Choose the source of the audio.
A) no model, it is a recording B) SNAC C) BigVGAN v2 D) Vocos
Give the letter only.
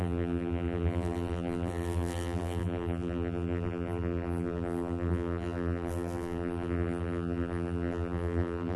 C